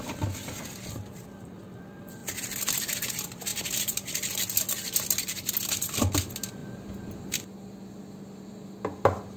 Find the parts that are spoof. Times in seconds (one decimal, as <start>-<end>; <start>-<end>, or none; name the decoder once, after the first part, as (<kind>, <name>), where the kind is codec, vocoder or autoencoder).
none